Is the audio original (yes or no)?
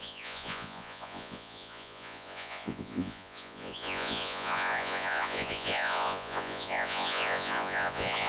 no